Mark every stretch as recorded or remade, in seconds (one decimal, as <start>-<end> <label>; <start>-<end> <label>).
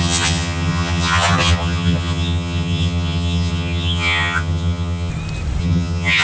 0.0-5.1 remade; 5.1-5.6 recorded; 5.6-6.2 remade